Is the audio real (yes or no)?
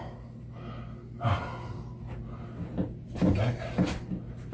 yes